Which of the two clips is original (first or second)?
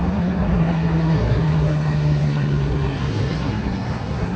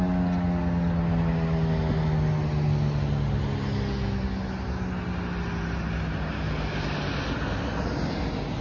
second